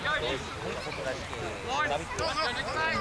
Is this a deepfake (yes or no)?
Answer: no